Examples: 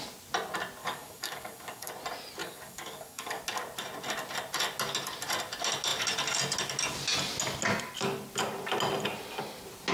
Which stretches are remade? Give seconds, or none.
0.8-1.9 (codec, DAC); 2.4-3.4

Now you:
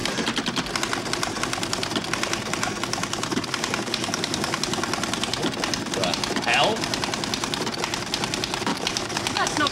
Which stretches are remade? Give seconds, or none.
3.3-4.6 (codec, DAC); 8.7-9.7